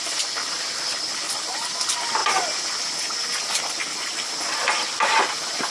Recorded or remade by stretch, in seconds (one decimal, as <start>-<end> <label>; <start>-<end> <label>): 0.0-5.7 recorded